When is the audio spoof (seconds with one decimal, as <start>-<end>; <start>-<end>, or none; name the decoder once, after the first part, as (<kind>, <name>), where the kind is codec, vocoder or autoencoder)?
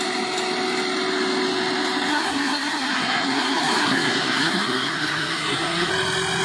2.1-5.9 (codec, SNAC)